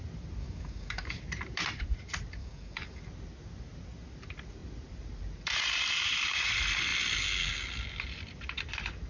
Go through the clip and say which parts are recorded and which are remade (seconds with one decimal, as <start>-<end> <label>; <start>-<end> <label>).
0.0-0.4 recorded; 0.4-1.2 remade; 1.2-2.4 recorded; 2.4-3.0 remade; 3.0-9.1 recorded